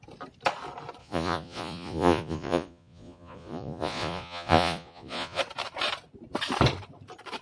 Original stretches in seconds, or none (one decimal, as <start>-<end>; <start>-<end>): 0.0-1.0; 5.4-7.4